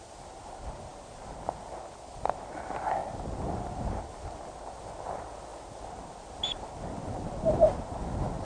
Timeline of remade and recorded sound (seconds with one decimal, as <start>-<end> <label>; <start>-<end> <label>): 0.0-8.4 recorded